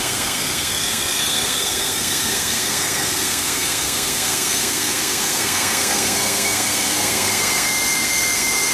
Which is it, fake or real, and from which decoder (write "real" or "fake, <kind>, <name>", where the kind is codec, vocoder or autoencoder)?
fake, codec, SNAC